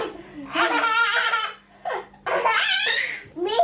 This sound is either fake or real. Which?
real